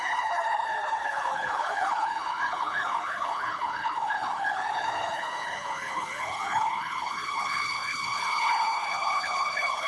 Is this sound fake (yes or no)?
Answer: yes